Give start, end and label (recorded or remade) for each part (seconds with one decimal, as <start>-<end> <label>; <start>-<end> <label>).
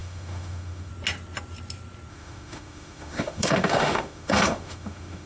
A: 0.0-0.9 remade; 0.9-2.1 recorded; 2.1-5.3 remade